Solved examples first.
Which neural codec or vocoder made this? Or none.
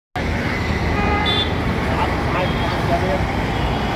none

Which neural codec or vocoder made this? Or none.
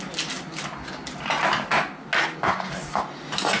none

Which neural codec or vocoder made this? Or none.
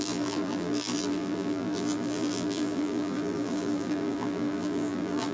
vocoder, BigVGAN v2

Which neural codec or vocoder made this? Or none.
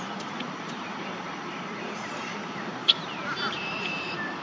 vocoder, BigVGAN v2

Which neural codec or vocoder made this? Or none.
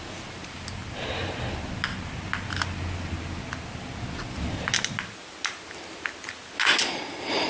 none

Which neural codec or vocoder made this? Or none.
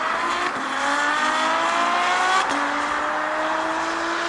none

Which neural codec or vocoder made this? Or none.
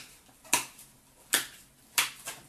none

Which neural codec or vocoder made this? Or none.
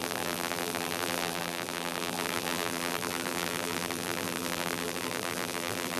vocoder, BigVGAN v2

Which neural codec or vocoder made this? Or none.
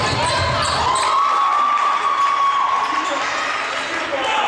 none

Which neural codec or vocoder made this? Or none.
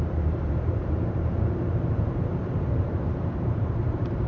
vocoder, BigVGAN v2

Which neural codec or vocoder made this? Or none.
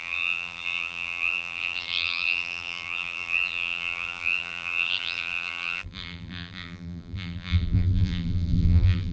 vocoder, BigVGAN v2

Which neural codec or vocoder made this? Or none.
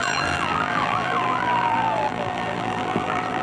vocoder, BigVGAN v2